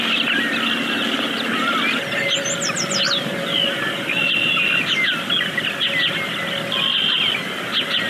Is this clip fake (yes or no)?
no